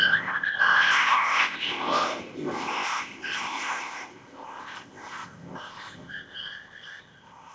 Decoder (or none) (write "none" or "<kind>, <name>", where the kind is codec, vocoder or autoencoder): codec, ZipCodec